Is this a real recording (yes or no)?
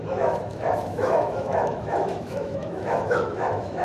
no